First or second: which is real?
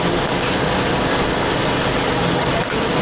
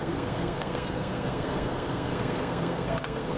first